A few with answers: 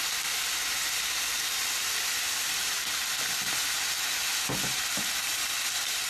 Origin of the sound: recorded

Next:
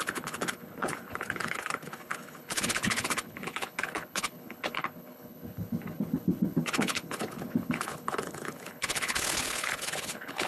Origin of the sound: remade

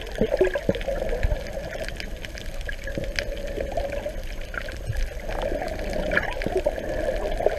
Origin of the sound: recorded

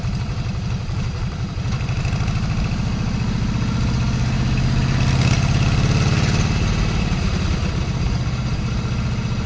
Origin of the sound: recorded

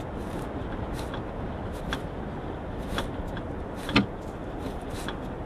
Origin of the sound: recorded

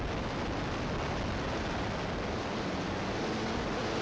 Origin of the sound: recorded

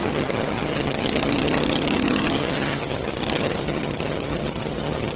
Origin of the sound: remade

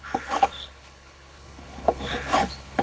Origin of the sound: remade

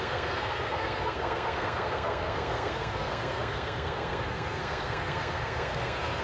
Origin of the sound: remade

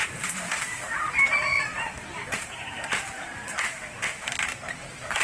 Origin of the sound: remade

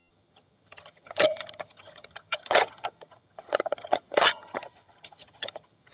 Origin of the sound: remade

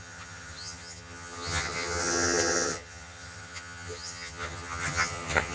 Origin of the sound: remade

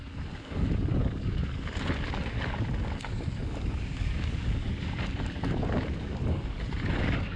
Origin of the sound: remade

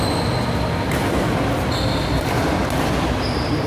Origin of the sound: recorded